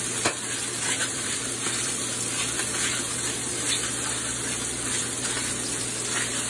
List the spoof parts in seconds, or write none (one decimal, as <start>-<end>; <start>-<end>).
1.0-2.0